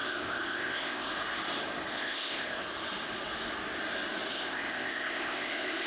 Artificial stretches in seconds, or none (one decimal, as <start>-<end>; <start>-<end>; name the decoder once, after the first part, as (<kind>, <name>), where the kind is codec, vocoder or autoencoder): 0.0-1.1 (codec, ZipCodec); 1.9-2.6; 4.3-5.9